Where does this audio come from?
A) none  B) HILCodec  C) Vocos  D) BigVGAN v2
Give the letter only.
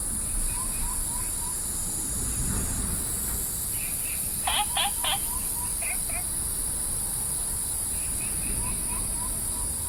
A